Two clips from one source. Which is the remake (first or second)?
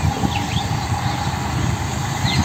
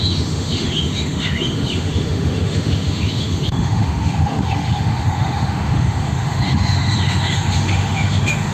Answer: second